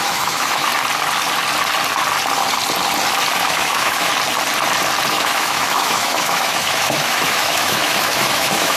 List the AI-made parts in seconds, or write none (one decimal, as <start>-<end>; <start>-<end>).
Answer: 0.0-0.7; 3.4-4.1; 5.1-8.8

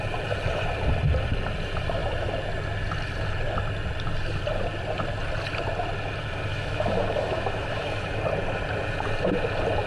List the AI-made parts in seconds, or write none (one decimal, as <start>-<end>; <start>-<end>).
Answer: 6.5-8.2

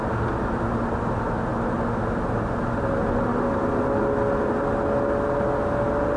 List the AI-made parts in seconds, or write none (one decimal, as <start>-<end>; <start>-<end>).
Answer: none

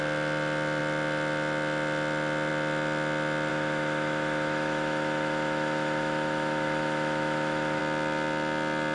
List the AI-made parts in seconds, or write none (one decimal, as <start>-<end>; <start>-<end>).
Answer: 3.5-7.8